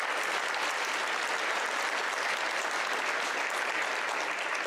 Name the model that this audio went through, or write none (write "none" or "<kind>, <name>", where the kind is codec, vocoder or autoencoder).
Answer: none